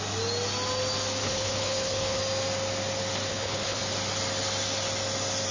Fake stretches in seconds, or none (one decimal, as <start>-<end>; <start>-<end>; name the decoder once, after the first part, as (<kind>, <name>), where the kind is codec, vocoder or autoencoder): 1.2-2.2 (codec, HILCodec); 3.3-3.8